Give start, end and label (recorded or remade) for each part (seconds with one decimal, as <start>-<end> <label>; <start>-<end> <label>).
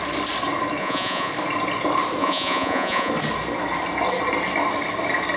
0.0-0.8 recorded; 0.8-1.3 remade; 1.3-2.2 recorded; 2.2-3.1 remade; 3.1-5.4 recorded